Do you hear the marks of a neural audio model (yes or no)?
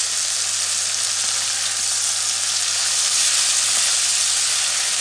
no